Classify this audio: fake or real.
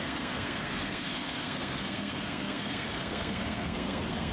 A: fake